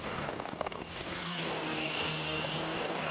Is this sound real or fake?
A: fake